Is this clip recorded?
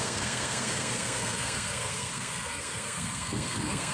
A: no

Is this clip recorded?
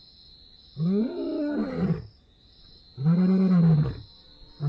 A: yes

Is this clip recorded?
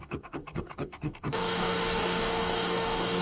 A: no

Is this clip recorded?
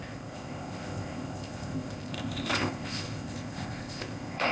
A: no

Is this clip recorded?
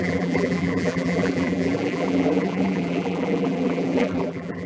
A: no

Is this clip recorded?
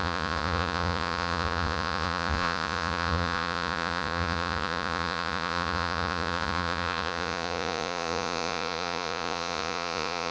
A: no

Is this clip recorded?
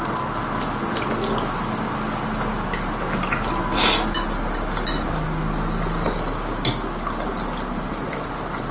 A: yes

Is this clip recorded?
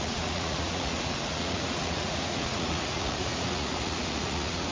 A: no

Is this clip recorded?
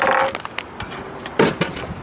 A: yes